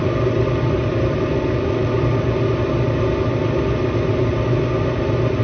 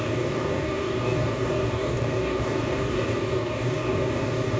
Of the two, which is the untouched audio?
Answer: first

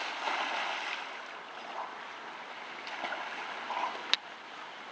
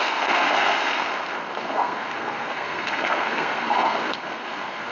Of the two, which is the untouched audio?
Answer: first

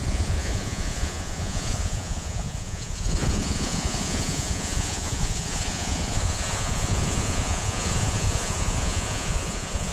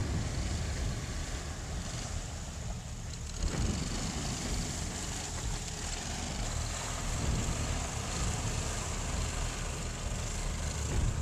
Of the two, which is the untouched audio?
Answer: second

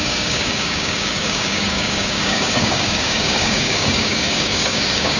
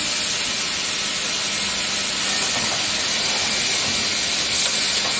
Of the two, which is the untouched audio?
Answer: second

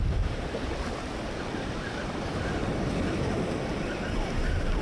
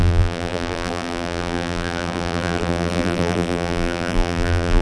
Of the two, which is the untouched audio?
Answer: first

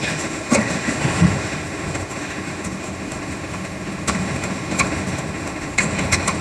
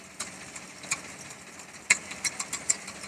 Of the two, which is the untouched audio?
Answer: second